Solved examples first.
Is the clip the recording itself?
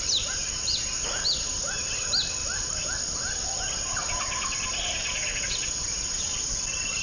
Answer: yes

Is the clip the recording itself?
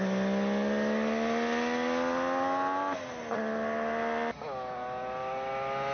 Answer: yes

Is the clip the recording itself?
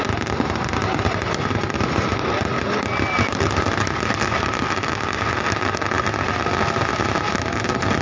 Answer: yes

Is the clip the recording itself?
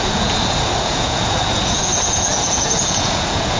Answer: no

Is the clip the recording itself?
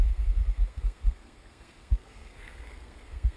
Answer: no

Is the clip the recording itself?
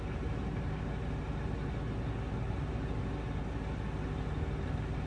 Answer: yes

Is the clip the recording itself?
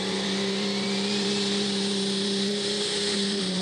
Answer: no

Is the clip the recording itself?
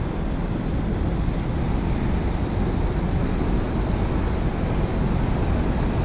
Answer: yes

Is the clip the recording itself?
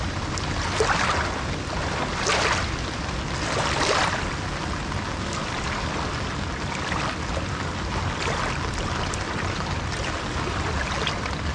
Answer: yes